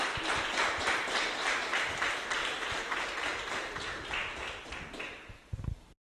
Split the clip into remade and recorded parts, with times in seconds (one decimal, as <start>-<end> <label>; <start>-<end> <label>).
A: 0.0-2.0 remade; 2.0-2.4 recorded; 2.4-3.1 remade; 3.1-6.1 recorded